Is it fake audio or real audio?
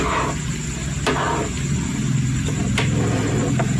real